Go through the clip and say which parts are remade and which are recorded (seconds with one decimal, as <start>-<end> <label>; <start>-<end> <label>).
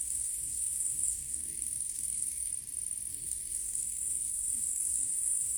0.0-2.5 remade; 2.5-3.1 recorded; 3.1-5.6 remade